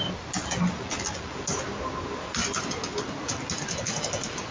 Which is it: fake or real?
real